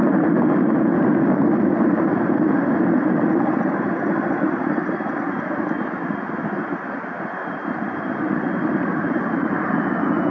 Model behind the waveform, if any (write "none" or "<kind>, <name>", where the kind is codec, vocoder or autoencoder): none